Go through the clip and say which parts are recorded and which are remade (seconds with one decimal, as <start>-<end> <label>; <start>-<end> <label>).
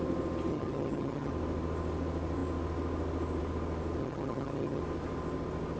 0.0-0.5 recorded; 0.5-1.3 remade; 1.3-4.0 recorded; 4.0-4.8 remade; 4.8-5.8 recorded